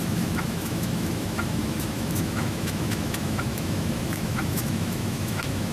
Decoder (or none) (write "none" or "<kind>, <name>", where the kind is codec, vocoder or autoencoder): autoencoder, DAC-VAE